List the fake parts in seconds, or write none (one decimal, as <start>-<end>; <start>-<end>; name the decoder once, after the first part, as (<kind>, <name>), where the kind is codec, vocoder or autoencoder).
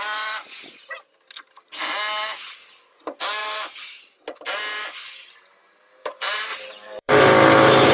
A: 3.4-4.0 (vocoder, BigVGAN v2); 6.5-7.2